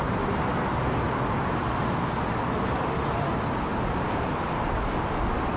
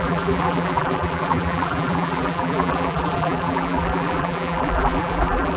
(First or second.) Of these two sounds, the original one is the first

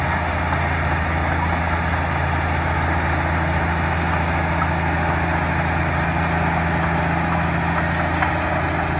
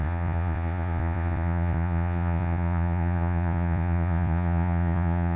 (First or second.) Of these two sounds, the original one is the first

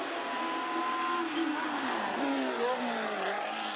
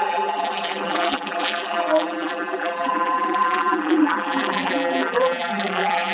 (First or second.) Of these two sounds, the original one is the first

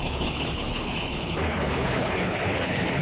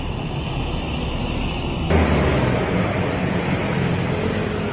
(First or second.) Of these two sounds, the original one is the second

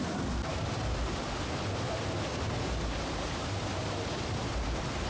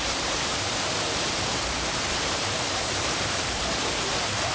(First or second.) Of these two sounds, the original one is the first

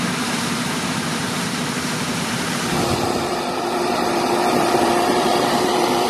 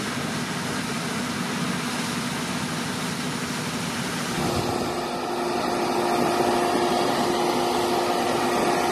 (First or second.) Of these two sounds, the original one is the second